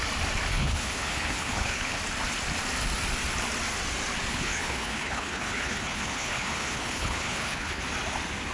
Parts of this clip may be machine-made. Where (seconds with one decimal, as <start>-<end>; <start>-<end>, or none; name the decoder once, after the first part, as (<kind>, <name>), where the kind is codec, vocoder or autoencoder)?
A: 0.5-2.0 (codec, HILCodec); 4.3-7.8